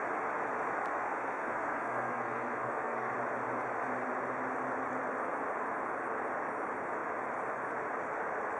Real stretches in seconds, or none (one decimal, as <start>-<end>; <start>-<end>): 0.0-0.9; 3.1-8.6